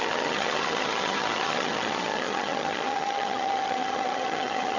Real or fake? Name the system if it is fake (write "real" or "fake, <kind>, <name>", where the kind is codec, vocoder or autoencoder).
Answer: fake, vocoder, HiFi-GAN